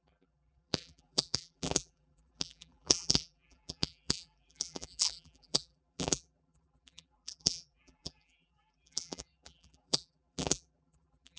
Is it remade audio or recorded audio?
remade